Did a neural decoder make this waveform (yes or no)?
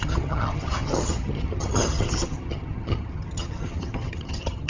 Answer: yes